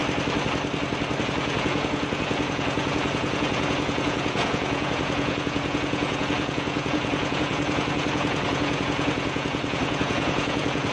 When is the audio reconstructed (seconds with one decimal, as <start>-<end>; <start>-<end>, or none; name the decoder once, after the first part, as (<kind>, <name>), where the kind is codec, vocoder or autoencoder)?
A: 1.2-10.9 (vocoder, Vocos)